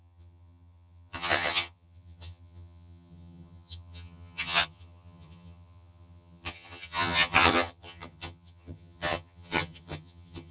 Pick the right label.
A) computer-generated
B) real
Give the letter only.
A